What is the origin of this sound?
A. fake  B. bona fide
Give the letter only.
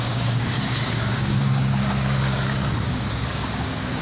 A